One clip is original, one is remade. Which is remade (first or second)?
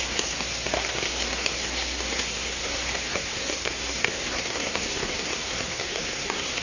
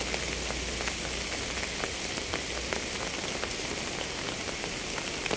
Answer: first